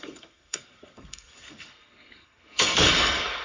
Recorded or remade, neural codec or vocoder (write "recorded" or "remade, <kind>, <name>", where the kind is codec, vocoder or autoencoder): remade, codec, SNAC